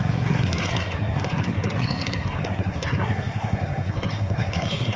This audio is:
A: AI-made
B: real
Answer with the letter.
A